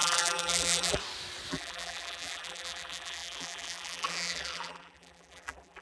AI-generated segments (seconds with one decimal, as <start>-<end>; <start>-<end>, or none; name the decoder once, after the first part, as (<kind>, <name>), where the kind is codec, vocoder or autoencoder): 0.0-1.0 (vocoder, BigVGAN v2); 1.5-5.8